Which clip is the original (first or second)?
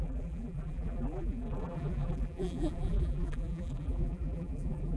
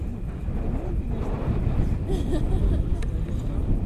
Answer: second